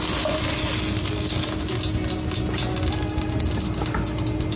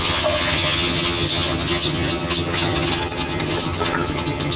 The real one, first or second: first